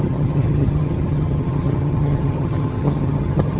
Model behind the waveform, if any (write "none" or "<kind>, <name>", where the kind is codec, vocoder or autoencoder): vocoder, HiFi-GAN